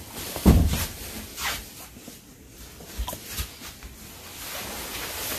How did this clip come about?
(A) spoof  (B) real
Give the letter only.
B